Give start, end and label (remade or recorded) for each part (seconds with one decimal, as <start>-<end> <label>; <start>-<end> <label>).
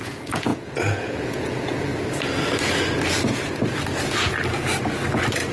0.0-1.9 remade; 1.9-5.5 recorded